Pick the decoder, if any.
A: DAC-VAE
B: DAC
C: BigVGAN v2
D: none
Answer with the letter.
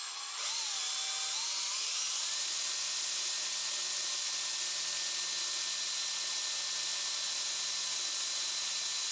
D